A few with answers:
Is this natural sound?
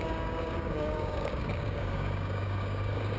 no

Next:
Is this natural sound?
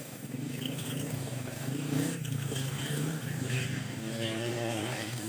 no